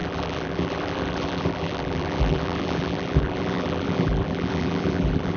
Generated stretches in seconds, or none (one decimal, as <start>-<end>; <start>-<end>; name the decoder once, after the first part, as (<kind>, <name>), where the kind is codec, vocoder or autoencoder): 0.0-5.4 (vocoder, BigVGAN v2)